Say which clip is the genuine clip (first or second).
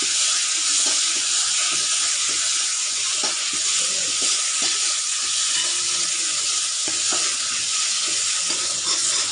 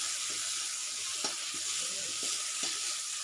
second